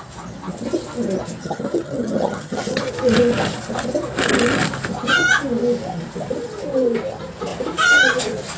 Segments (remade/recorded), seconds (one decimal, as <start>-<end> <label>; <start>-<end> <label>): 0.0-1.4 recorded; 1.4-2.8 remade; 2.8-8.6 recorded

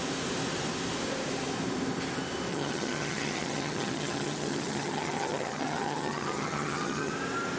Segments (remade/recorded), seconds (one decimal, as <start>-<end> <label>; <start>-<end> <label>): 0.0-2.5 recorded; 2.5-7.1 remade; 7.1-7.6 recorded

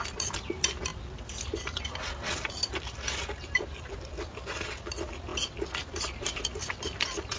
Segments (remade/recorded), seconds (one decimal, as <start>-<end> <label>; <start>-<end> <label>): 0.0-7.4 recorded

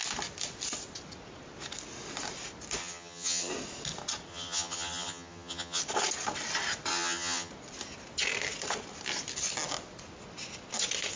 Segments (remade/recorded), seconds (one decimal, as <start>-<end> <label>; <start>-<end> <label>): 0.0-2.8 recorded; 2.8-3.5 remade; 3.5-4.3 recorded; 4.3-5.8 remade; 5.8-6.9 recorded; 6.9-7.5 remade; 7.5-11.2 recorded

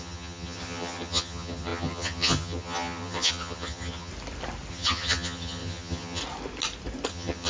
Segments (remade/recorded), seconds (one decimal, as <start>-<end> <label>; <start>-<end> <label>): 0.0-4.1 remade; 4.1-4.7 recorded; 4.7-6.2 remade; 6.2-7.1 recorded; 7.1-7.5 remade